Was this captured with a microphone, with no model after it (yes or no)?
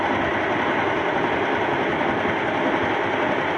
yes